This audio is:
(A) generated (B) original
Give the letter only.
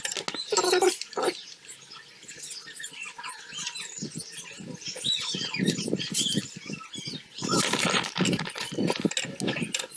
B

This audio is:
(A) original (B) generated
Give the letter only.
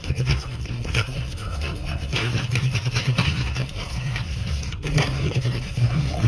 B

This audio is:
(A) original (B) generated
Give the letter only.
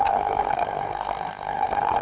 B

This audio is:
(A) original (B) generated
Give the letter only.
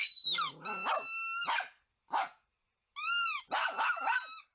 A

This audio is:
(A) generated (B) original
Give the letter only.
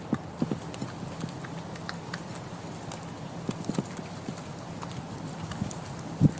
B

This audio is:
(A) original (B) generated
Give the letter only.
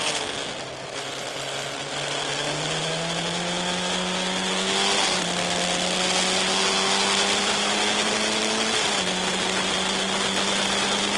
A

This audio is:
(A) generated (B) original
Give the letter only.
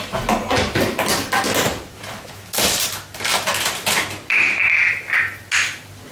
B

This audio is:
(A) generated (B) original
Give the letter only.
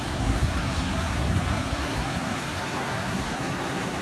A